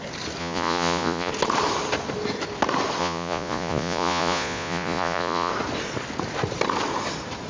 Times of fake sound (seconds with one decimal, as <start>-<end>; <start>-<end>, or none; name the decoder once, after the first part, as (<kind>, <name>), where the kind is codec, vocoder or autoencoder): 0.4-1.3 (vocoder, Vocos); 3.0-5.5

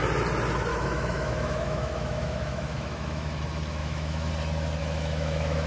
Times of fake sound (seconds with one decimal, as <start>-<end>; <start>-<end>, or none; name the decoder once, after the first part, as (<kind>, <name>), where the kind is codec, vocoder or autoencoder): 0.7-3.4 (autoencoder, DAC-VAE); 3.8-4.3; 4.8-5.7

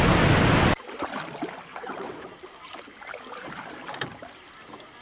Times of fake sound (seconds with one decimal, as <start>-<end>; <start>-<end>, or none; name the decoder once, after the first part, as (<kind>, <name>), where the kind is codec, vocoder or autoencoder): 1.7-2.2 (vocoder, WaveNeXt)

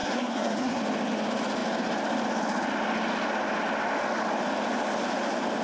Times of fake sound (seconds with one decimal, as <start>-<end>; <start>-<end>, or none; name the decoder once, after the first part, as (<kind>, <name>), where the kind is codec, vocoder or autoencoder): 0.0-0.8 (codec, SNAC)

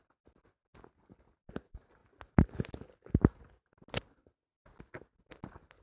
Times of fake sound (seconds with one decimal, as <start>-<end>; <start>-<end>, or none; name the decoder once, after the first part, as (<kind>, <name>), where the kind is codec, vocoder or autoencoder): none

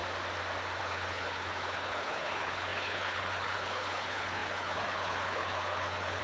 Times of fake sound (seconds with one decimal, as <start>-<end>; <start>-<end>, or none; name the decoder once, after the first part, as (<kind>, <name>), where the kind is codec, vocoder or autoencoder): 0.8-6.2 (codec, HILCodec)

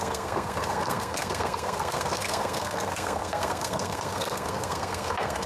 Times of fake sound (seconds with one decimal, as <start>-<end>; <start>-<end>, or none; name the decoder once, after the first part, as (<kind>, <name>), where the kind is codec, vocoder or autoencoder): 0.0-5.5 (codec, SNAC)